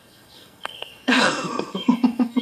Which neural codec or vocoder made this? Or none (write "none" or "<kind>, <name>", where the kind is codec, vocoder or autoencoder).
codec, SNAC